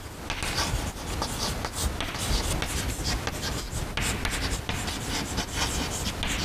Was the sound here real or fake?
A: real